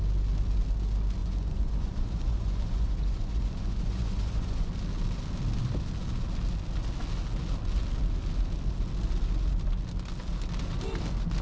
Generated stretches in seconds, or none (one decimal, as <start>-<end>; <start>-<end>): 1.2-4.7